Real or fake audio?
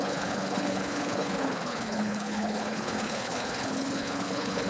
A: fake